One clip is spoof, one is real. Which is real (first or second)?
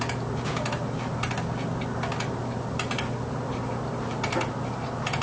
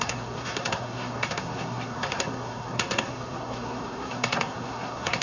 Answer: first